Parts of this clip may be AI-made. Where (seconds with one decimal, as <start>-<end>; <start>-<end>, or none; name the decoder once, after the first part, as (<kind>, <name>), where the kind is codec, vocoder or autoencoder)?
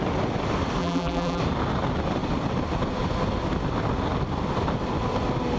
0.8-1.4 (vocoder, BigVGAN v2)